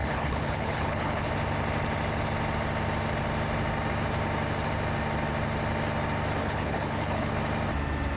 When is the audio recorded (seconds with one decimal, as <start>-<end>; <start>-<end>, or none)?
1.3-6.4; 7.3-8.2